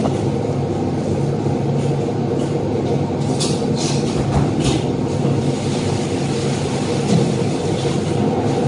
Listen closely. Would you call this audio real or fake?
real